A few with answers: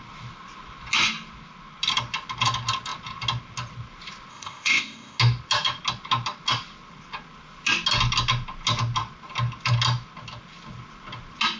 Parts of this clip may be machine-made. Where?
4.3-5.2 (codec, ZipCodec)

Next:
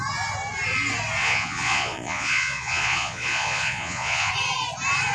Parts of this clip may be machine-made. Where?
1.2-4.3 (vocoder, Vocos)